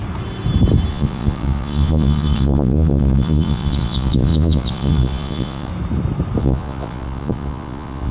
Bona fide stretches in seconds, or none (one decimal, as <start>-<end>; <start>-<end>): 0.0-0.9; 5.7-6.4